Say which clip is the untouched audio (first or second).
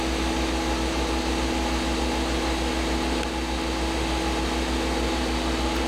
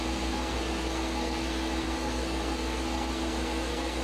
first